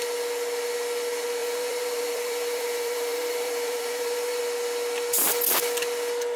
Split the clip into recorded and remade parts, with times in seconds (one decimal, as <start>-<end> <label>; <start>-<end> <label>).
0.0-1.4 recorded; 1.4-4.4 remade; 4.4-6.4 recorded